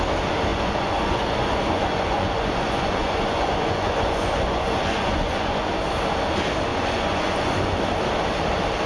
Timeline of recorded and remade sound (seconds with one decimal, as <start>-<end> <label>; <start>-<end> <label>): 0.0-0.5 recorded; 0.5-5.7 remade; 5.7-6.7 recorded; 6.7-7.8 remade; 7.8-8.9 recorded